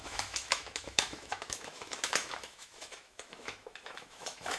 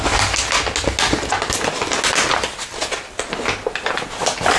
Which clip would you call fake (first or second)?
first